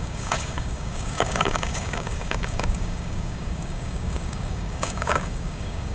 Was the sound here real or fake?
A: fake